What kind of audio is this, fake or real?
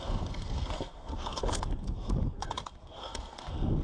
fake